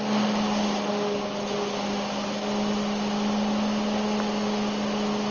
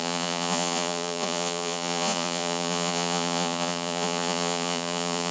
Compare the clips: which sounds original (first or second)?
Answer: first